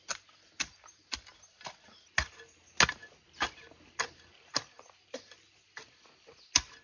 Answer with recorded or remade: recorded